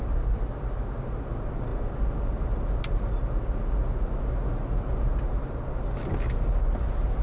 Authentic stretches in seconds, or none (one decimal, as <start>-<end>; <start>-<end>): 0.0-7.2

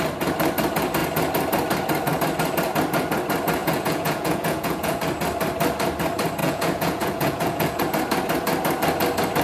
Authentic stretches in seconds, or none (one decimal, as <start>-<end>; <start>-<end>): 0.0-3.6; 5.0-6.4; 7.8-9.4

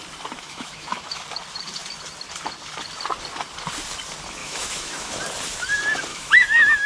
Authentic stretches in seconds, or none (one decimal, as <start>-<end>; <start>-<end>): 0.0-0.4; 1.2-4.4; 5.2-6.1